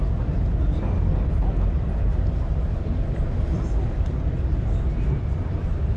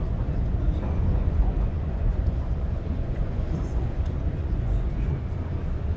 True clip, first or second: first